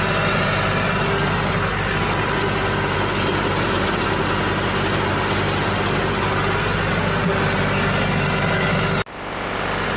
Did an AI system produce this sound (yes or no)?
no